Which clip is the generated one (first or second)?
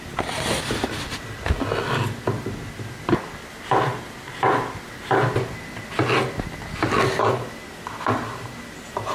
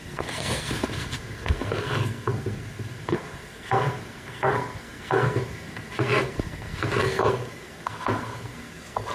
second